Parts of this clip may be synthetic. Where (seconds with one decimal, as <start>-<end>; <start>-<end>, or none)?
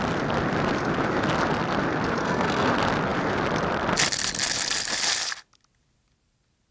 2.2-2.7